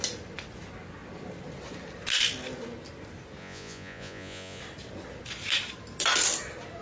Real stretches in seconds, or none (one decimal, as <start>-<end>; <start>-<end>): 0.0-3.4; 4.6-6.8